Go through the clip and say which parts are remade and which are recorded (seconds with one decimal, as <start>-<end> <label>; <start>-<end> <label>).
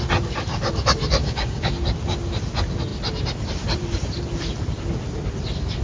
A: 0.0-1.2 recorded; 1.2-1.7 remade; 1.7-5.8 recorded